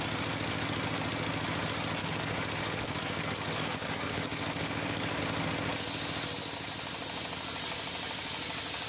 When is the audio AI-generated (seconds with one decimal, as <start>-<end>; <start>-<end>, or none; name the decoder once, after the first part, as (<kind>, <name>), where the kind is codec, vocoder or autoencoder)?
2.0-5.2 (codec, DAC)